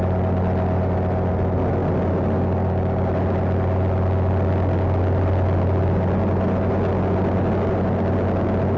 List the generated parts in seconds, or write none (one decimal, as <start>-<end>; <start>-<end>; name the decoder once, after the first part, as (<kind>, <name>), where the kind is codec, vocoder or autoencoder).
none